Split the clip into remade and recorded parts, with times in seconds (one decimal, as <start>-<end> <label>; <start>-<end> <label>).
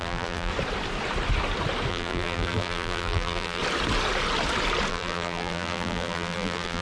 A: 0.0-0.5 remade; 0.5-1.9 recorded; 1.9-3.6 remade; 3.6-4.9 recorded; 4.9-6.8 remade